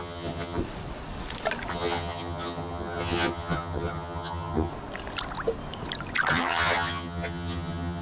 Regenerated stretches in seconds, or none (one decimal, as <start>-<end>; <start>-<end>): 0.0-0.6; 1.7-4.7; 6.3-8.0